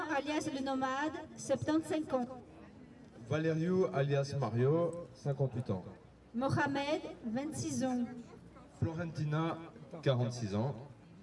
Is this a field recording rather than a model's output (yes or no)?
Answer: yes